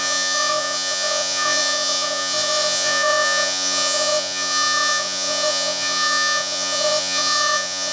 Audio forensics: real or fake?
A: fake